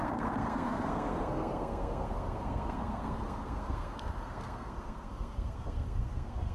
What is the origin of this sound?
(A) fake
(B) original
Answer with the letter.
A